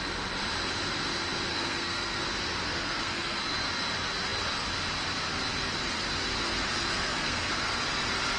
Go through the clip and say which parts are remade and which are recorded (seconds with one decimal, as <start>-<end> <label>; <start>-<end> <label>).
0.0-1.5 recorded; 1.5-2.2 remade; 2.2-2.6 recorded; 2.6-3.4 remade; 3.4-6.9 recorded; 6.9-7.5 remade; 7.5-8.4 recorded

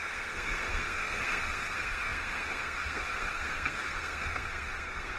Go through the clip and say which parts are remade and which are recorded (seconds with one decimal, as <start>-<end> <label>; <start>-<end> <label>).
0.0-5.2 remade

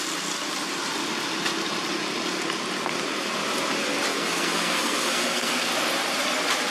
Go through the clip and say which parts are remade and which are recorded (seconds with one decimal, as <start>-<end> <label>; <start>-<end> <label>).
0.0-4.1 recorded; 4.1-5.7 remade; 5.7-6.7 recorded

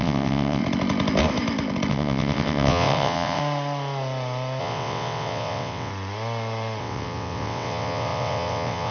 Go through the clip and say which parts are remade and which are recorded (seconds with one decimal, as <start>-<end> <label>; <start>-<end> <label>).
0.0-0.6 remade; 0.6-1.9 recorded; 1.9-3.4 remade; 3.4-4.6 recorded; 4.6-5.9 remade; 5.9-6.8 recorded; 6.8-8.9 remade